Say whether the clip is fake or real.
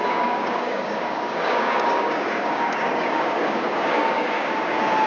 fake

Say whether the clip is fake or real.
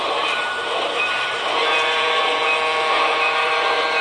fake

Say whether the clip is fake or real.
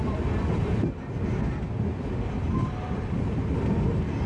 real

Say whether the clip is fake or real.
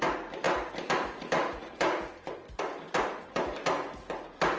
real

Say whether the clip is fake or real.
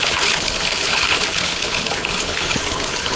fake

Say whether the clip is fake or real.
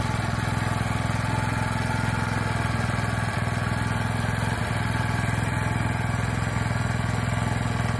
real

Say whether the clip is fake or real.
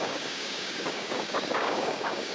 fake